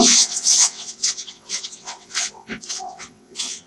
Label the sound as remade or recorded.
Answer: remade